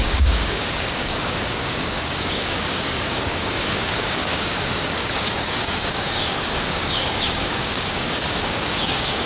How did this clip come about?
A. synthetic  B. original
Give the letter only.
A